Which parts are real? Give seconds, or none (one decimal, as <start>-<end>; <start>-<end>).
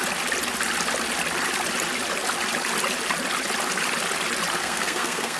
0.0-4.6